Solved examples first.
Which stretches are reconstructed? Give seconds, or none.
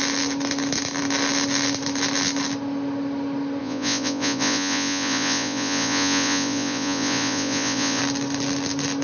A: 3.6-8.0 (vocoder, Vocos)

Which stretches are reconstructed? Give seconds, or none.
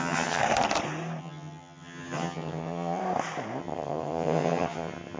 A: 0.0-0.4 (vocoder, HiFi-GAN); 1.2-3.0; 3.6-5.2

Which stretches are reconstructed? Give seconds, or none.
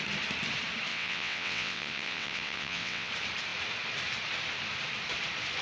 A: 0.9-3.1 (vocoder, WaveNeXt)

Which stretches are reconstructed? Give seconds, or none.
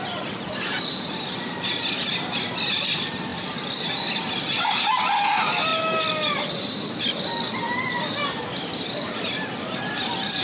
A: none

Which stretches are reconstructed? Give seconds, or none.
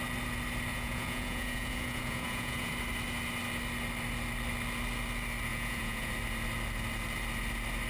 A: 0.7-2.7 (vocoder, Vocos); 5.5-6.1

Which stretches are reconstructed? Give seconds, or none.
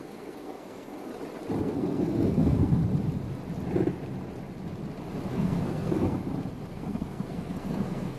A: 0.0-1.1 (codec, SNAC); 1.6-2.8; 5.3-6.2; 6.7-8.2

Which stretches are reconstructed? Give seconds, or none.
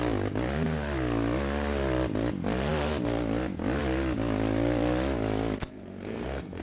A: 5.7-6.6 (codec, SNAC)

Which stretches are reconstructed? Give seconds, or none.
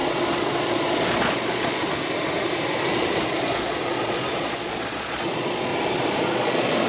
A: 0.0-1.8 (vocoder, Vocos); 3.4-5.7; 6.3-6.9